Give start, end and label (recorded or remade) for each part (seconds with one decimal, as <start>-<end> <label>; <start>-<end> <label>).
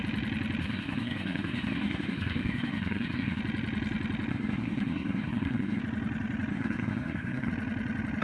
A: 0.0-0.6 recorded; 0.6-3.4 remade; 3.4-4.3 recorded; 4.3-5.8 remade; 5.8-6.5 recorded; 6.5-7.5 remade; 7.5-8.2 recorded